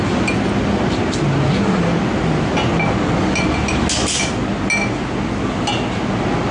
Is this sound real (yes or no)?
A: yes